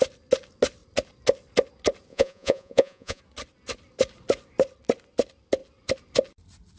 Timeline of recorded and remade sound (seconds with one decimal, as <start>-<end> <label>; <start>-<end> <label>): 0.0-2.1 recorded; 2.1-3.2 remade; 3.2-6.8 recorded

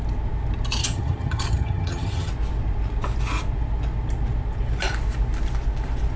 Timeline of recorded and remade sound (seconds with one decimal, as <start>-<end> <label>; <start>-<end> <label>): 0.0-0.8 recorded; 0.8-2.3 remade; 2.3-6.2 recorded

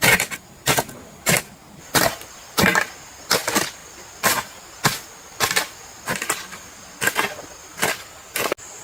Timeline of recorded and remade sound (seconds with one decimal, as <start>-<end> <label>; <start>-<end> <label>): 0.0-8.8 recorded

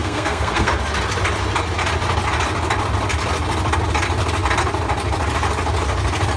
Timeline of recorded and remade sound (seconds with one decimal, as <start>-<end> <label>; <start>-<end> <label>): 0.0-0.7 remade; 0.7-6.4 recorded

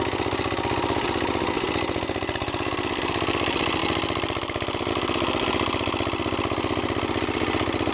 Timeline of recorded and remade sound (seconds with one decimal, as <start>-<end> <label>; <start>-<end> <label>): 0.0-7.9 recorded

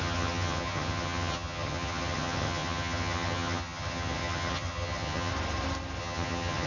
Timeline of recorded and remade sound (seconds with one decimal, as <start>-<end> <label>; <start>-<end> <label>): 0.0-5.3 remade; 5.3-6.0 recorded; 6.0-6.7 remade